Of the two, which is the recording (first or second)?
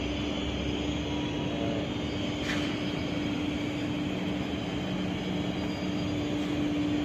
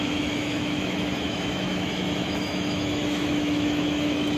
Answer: first